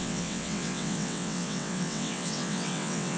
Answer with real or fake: fake